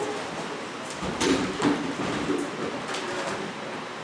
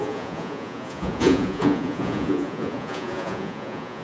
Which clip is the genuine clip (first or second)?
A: first